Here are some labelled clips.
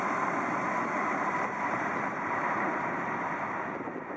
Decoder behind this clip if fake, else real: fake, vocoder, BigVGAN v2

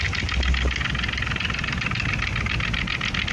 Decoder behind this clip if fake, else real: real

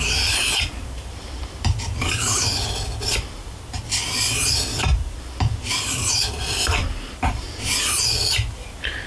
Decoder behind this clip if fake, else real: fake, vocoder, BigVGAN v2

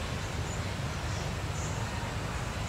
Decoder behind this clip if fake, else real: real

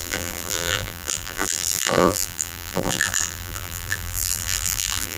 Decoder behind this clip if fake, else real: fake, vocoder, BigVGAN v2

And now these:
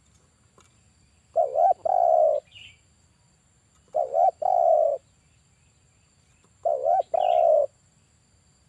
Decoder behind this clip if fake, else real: real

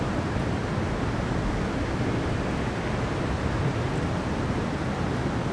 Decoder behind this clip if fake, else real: real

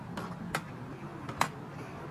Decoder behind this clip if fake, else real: real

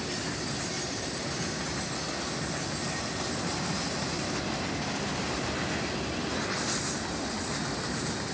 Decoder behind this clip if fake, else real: real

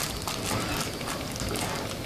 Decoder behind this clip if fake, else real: real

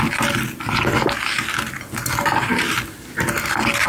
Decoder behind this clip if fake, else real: real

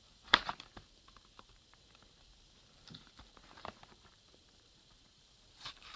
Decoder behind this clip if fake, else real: fake, vocoder, BigVGAN v2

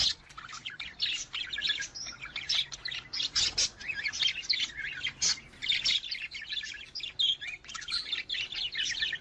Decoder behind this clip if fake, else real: real